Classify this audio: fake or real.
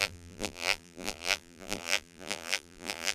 fake